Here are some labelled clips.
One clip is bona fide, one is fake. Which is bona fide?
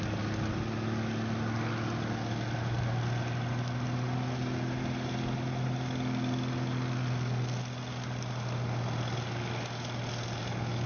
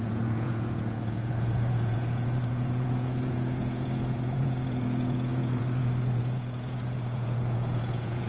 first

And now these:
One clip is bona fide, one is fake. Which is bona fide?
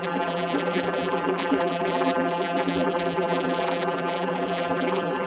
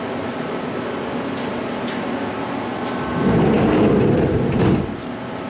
second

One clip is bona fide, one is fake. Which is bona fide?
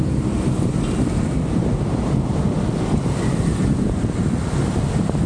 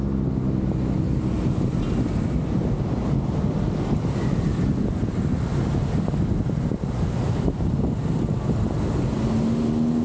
second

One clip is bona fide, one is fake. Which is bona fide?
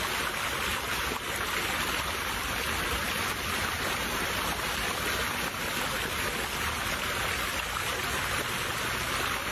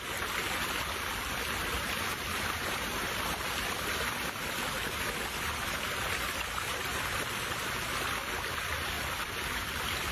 first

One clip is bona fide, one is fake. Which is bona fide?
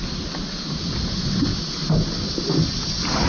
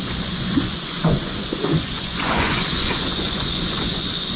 first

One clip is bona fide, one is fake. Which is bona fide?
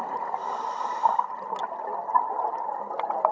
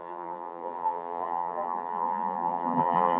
first